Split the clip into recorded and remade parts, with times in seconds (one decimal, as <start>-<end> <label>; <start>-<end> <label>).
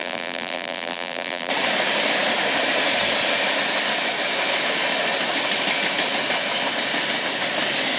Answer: 0.0-1.5 remade; 1.5-8.0 recorded